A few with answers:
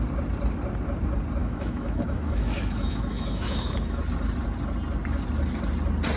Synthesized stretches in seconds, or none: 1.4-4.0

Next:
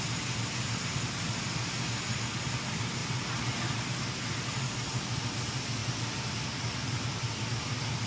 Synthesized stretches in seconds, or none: none